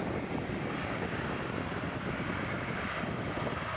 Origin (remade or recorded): recorded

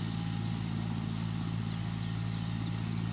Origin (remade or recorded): recorded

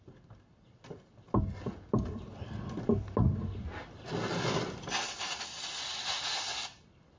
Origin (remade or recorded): recorded